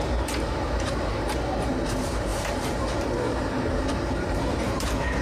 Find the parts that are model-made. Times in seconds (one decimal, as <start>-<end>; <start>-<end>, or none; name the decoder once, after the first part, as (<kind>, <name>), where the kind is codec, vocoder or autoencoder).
0.0-5.2 (vocoder, BigVGAN v2)